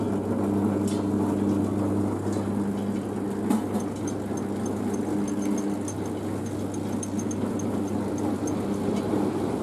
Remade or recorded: recorded